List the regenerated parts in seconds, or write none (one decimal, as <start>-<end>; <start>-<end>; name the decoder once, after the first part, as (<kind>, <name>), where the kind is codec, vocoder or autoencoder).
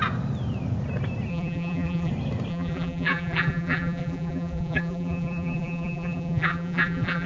1.3-2.1 (vocoder, BigVGAN v2); 2.5-7.3